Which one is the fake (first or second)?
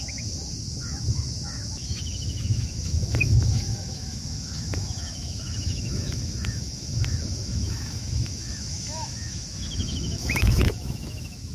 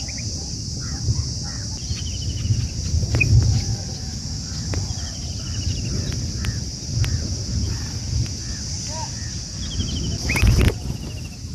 first